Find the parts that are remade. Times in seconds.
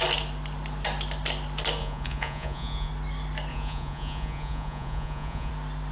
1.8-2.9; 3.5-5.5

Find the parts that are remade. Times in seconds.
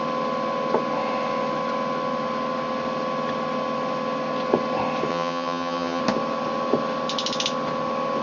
5.1-6.0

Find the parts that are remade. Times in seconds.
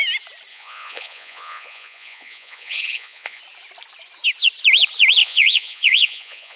0.5-3.4; 5.2-6.6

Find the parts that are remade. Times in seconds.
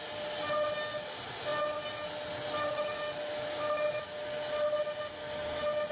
none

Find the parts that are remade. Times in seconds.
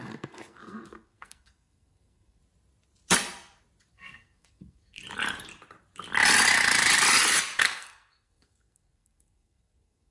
0.0-2.4; 3.9-5.0; 7.6-10.1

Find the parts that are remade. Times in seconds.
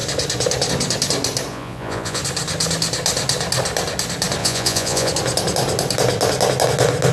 1.5-2.2; 4.4-5.1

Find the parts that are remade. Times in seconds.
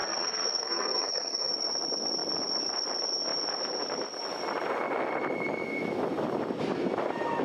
0.0-1.5